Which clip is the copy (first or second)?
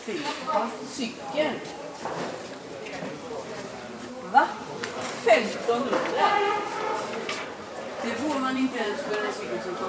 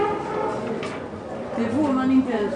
first